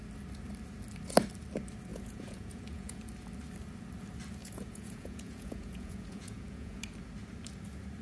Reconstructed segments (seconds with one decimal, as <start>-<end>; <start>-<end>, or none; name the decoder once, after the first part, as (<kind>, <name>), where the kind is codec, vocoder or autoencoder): 1.9-3.0 (vocoder, Vocos); 4.4-6.8